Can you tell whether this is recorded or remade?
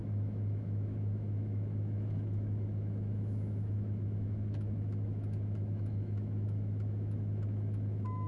remade